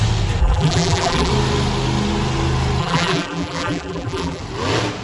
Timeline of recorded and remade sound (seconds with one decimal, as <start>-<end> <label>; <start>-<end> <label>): 0.0-0.4 recorded; 0.4-1.3 remade; 1.3-2.8 recorded; 2.8-4.4 remade; 4.4-5.0 recorded